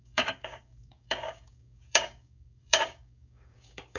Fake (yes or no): yes